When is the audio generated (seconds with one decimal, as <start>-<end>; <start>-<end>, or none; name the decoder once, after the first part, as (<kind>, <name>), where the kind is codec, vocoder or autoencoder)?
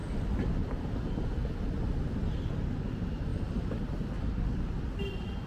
none